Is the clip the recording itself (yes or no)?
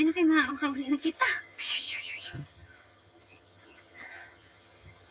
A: no